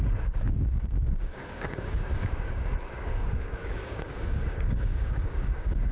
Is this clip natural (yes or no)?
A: no